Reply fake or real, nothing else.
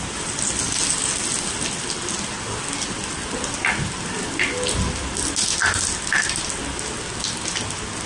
real